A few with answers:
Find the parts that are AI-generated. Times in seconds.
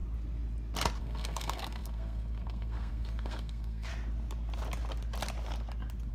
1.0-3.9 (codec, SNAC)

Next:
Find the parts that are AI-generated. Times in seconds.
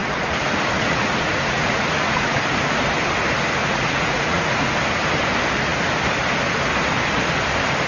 0.0-2.4 (vocoder, Vocos); 3.6-4.7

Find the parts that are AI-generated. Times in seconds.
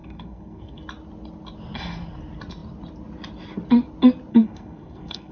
0.0-0.8 (codec, SNAC); 4.3-5.3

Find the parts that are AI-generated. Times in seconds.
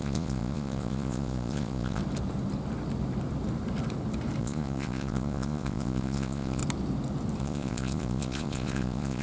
0.0-2.0 (vocoder, Vocos); 4.4-6.6; 7.4-9.2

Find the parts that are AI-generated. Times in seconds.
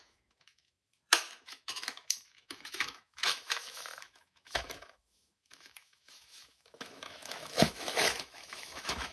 0.0-9.1 (autoencoder, DAC-VAE)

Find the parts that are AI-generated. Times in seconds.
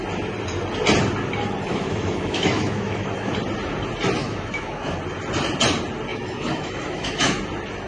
1.7-3.3 (autoencoder, DAC-VAE); 4.2-5.0; 6.1-7.4